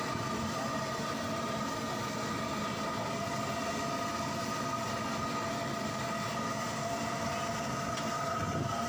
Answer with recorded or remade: recorded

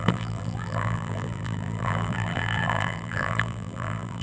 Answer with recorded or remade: remade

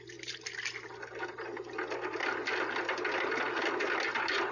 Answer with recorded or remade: recorded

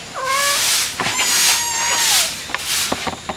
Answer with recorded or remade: recorded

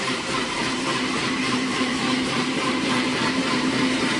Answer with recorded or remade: remade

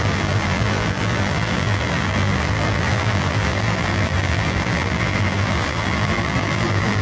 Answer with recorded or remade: remade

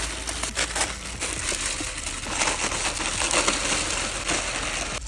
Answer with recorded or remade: recorded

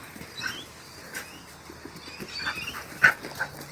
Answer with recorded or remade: recorded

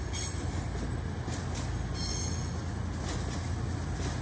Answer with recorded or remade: recorded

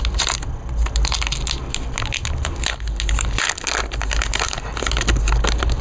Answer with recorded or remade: recorded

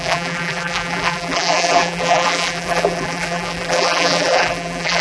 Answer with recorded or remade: remade